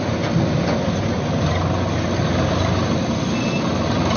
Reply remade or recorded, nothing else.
recorded